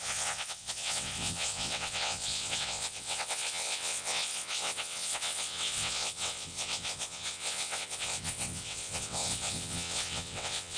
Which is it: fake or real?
fake